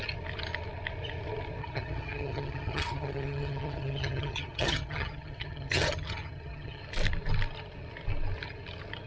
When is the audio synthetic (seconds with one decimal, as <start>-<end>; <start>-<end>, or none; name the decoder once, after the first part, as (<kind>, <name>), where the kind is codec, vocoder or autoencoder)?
1.6-6.8 (vocoder, HiFi-GAN)